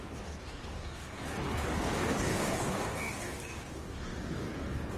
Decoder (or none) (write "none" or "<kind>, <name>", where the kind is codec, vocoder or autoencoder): codec, DAC